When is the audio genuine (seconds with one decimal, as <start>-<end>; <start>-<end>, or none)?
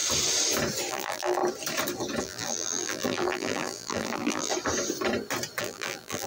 0.0-0.9; 1.4-2.2; 4.5-5.6